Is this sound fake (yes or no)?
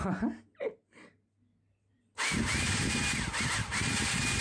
no